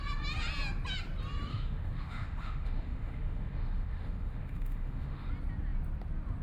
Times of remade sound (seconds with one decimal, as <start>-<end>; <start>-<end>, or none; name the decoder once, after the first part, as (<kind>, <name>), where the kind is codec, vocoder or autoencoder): 1.5-5.3 (autoencoder, DAC-VAE)